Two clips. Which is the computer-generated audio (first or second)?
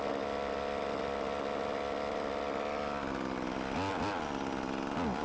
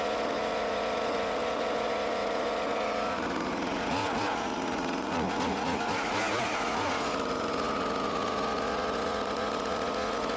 second